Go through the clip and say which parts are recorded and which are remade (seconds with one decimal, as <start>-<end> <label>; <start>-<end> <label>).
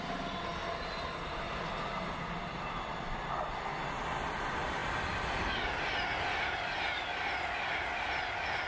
0.0-8.7 recorded